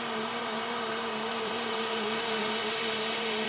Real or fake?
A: fake